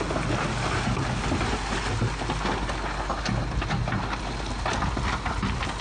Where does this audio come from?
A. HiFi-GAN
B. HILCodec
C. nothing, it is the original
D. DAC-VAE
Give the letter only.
C